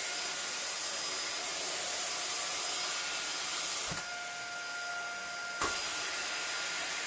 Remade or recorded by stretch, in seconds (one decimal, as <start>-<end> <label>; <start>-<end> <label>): 0.0-7.1 recorded